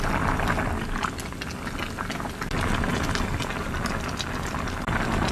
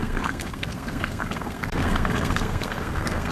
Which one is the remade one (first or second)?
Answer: second